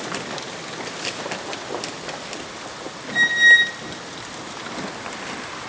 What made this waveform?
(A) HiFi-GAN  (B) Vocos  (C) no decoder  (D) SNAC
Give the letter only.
C